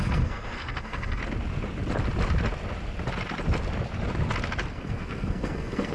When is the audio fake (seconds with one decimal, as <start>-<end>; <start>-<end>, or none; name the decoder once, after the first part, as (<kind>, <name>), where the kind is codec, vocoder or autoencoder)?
0.0-1.2 (codec, SNAC); 4.7-5.9